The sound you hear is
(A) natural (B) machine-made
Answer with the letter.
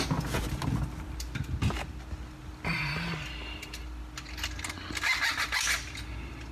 A